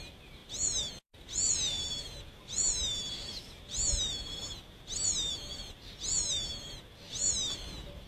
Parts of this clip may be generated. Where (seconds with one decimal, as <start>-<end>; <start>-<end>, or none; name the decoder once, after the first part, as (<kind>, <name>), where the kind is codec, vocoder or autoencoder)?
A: none